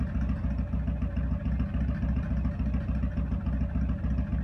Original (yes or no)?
yes